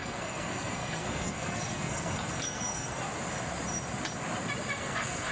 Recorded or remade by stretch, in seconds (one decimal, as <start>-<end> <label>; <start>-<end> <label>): 0.0-3.0 remade; 3.0-4.7 recorded; 4.7-5.3 remade